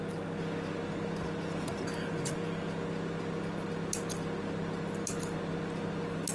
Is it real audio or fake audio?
real